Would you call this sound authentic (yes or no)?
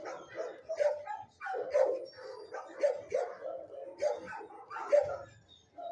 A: yes